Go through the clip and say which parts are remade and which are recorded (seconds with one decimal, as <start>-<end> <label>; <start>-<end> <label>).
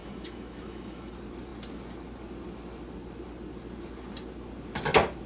0.0-1.1 remade; 1.1-5.3 recorded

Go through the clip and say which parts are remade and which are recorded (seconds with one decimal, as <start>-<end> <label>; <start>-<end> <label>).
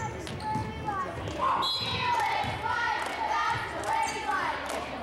0.0-5.0 recorded